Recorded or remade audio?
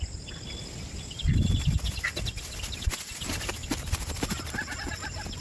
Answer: recorded